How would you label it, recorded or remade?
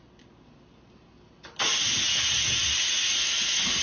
recorded